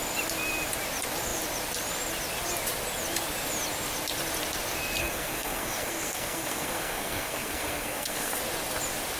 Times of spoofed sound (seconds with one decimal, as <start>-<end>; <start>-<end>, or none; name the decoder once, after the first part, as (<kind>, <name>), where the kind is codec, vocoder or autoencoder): 5.0-8.4 (codec, SNAC)